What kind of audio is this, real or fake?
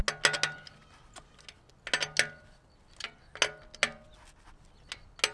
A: real